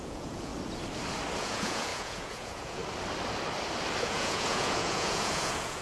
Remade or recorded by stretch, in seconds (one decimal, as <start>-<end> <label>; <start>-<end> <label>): 0.0-0.5 remade; 0.5-1.4 recorded; 1.4-2.8 remade; 2.8-4.0 recorded; 4.0-5.8 remade

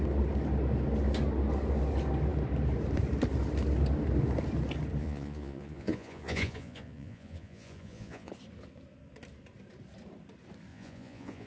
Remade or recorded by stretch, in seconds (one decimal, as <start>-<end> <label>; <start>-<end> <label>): 0.0-5.0 recorded; 5.0-8.3 remade; 8.3-10.7 recorded; 10.7-11.5 remade

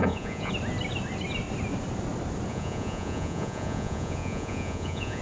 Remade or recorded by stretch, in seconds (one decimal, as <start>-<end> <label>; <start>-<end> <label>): 0.0-0.5 remade; 0.5-2.5 recorded; 2.5-5.2 remade